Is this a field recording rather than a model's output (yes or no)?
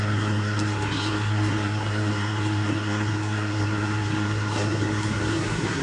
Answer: no